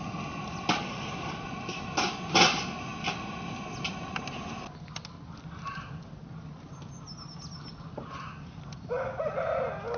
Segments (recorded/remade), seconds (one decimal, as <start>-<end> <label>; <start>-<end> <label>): 0.0-10.0 recorded